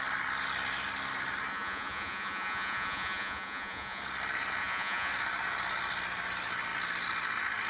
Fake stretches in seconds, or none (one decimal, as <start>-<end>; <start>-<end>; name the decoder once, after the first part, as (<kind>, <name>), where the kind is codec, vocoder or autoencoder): 1.5-4.0 (vocoder, Vocos); 4.6-5.1

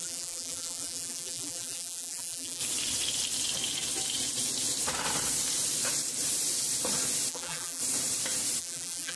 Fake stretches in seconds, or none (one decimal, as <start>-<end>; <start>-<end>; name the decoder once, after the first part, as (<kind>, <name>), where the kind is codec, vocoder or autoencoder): 0.0-2.6 (vocoder, BigVGAN v2); 7.3-7.8; 8.6-9.1

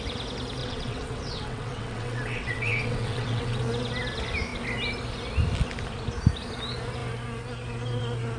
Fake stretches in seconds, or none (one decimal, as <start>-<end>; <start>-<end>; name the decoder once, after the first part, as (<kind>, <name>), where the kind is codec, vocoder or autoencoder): 0.6-3.6 (vocoder, WaveNeXt)